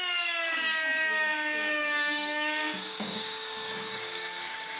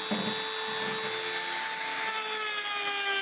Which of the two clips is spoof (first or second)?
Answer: first